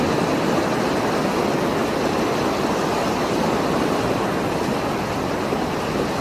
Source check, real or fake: real